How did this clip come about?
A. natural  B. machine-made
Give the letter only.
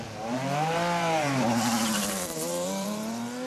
B